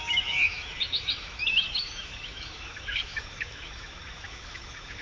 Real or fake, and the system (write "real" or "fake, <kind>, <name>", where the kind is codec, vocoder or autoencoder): fake, autoencoder, DAC-VAE